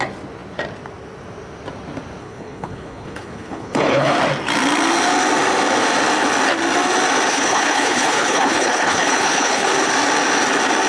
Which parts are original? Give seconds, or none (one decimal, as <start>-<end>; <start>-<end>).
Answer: 0.0-2.2; 4.2-7.3; 9.7-10.9